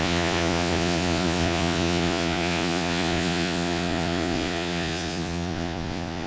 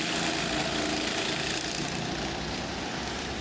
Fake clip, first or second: first